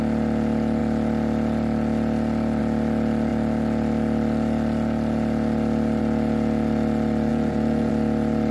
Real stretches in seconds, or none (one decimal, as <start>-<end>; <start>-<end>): 0.0-7.3; 7.9-8.5